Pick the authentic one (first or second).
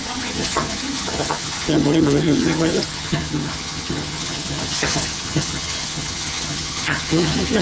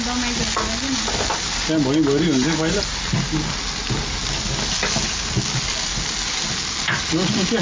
second